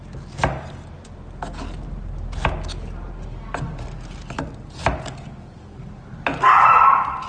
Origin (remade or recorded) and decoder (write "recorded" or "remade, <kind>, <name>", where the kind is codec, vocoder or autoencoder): recorded